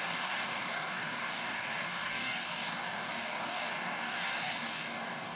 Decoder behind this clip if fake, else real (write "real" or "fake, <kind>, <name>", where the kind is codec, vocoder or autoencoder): fake, codec, DAC